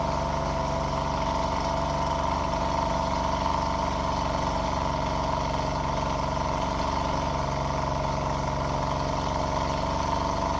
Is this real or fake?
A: real